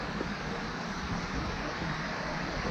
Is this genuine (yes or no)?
no